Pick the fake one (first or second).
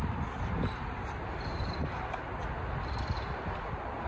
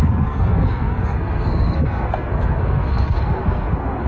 second